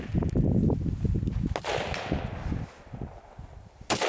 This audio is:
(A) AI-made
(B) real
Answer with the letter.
B